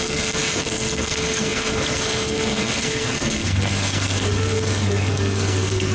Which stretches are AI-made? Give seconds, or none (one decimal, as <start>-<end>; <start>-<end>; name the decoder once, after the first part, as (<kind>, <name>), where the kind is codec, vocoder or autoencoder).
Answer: 0.0-5.9 (codec, SNAC)